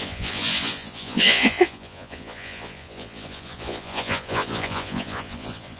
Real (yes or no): no